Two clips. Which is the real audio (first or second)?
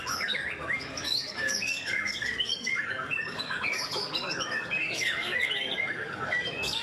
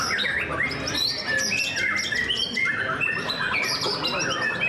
second